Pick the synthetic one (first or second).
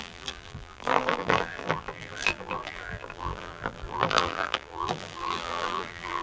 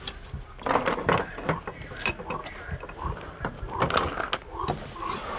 first